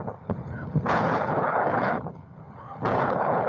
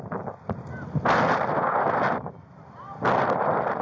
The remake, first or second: first